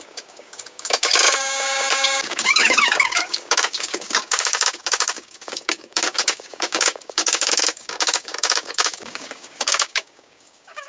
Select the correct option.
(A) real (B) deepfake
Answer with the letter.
B